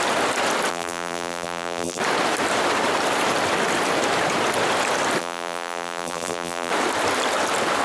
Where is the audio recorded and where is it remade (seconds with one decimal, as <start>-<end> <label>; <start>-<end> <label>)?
0.0-0.7 recorded; 0.7-2.0 remade; 2.0-5.2 recorded; 5.2-6.7 remade; 6.7-7.8 recorded